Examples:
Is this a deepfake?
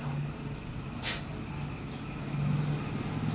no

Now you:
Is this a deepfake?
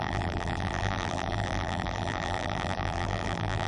yes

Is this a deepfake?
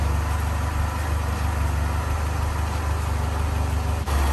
no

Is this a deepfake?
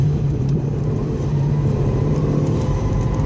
yes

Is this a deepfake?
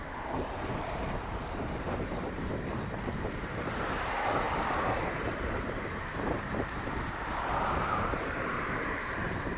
yes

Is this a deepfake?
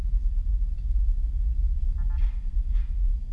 no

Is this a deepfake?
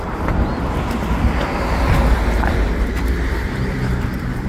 yes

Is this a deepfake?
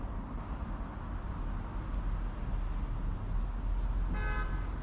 no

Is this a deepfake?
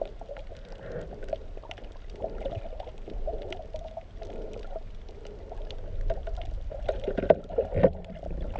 yes